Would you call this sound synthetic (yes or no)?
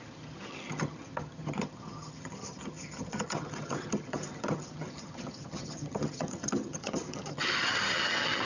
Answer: yes